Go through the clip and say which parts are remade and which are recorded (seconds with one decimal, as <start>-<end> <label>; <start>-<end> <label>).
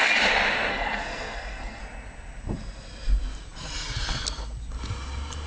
0.0-0.7 recorded; 0.7-1.8 remade; 1.8-5.5 recorded